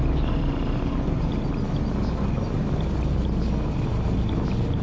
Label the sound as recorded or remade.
recorded